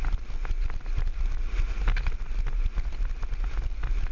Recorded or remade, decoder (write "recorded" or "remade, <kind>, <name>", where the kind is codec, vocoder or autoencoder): recorded